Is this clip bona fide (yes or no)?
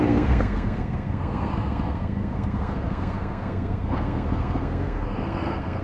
no